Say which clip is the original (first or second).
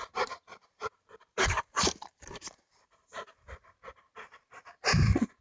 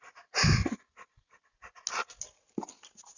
second